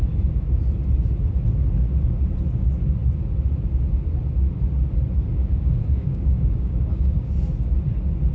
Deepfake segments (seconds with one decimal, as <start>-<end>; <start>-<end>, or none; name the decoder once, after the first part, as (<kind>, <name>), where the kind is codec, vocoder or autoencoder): 5.4-7.3 (codec, DAC)